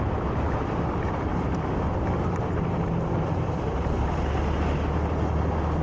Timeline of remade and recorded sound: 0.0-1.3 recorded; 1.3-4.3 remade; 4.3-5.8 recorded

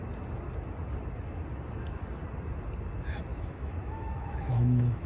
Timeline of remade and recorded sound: 0.0-3.3 recorded; 3.3-5.1 remade

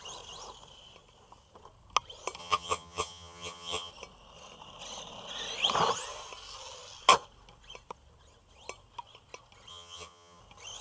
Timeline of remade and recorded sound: 0.0-2.4 recorded; 2.4-3.9 remade; 3.9-9.7 recorded; 9.7-10.4 remade; 10.4-10.8 recorded

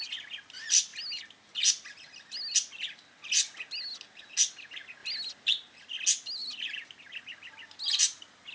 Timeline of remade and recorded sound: 0.0-8.5 recorded